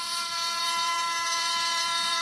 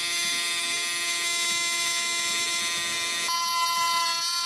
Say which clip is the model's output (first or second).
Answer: first